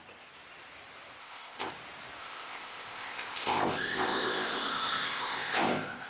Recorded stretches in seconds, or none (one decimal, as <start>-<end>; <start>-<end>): 0.0-1.2; 1.7-2.2